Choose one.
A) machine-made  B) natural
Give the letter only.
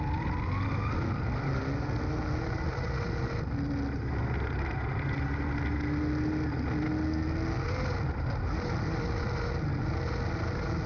B